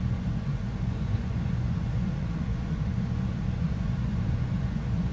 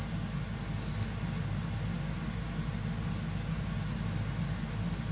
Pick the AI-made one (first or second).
first